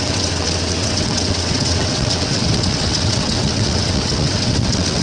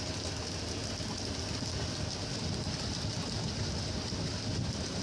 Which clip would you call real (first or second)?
second